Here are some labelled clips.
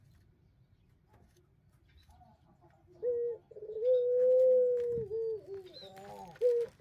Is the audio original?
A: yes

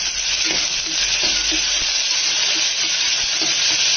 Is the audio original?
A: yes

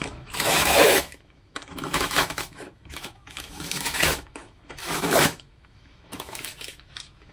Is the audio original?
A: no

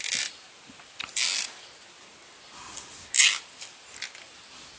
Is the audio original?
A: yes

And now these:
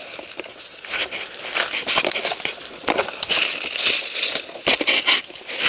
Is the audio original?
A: yes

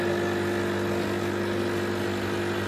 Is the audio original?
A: yes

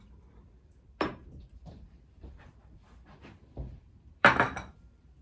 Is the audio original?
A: no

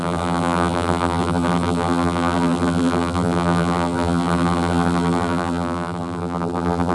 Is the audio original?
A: no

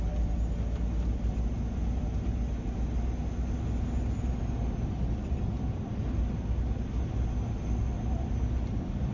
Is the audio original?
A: yes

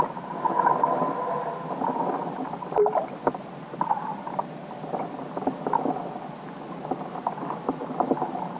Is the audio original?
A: yes